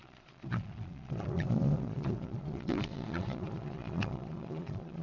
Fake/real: fake